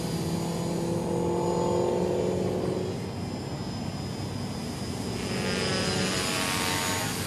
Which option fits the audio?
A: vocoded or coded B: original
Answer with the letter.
B